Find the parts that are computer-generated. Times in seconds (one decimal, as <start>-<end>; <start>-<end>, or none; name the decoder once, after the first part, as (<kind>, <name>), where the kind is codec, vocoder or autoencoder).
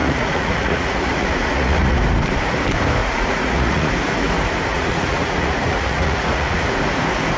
0.0-2.0 (vocoder, Vocos); 3.0-3.9; 4.7-6.8